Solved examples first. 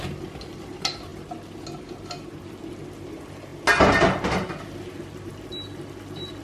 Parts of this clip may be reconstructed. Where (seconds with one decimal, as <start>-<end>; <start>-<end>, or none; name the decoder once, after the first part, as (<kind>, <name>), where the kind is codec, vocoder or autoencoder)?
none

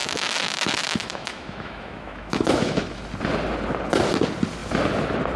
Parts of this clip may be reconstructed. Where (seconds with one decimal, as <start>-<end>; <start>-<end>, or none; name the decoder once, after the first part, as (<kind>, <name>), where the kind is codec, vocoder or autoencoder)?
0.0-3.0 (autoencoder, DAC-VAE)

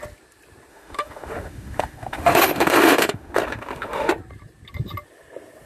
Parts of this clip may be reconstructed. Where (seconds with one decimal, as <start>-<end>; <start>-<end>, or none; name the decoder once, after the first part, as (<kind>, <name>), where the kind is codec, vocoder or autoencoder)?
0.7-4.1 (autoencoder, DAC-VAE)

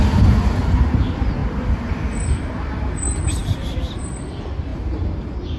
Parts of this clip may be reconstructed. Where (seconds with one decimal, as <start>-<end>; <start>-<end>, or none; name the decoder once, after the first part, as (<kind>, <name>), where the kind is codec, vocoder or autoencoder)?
3.4-4.2 (vocoder, BigVGAN v2)

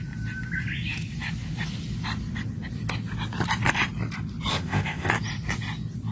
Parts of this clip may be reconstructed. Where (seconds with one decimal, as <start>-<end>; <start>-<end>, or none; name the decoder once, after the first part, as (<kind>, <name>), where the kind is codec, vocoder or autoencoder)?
4.5-5.1 (codec, ZipCodec)

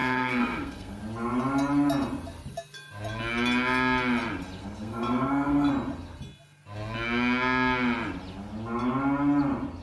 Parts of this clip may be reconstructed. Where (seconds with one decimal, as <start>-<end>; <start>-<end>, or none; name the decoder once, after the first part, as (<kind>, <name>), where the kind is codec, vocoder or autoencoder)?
0.0-1.0 (codec, SNAC); 4.6-5.7